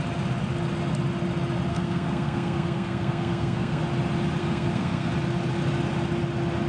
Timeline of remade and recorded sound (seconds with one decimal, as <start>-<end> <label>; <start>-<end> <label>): 0.0-1.7 recorded; 1.7-3.8 remade; 3.8-4.4 recorded; 4.4-5.1 remade; 5.1-6.7 recorded